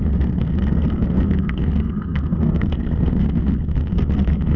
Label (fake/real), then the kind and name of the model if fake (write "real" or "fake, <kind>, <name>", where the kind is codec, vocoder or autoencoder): fake, codec, SNAC